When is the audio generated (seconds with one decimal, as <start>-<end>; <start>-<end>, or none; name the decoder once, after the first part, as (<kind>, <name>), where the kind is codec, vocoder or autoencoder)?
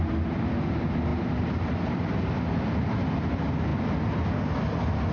none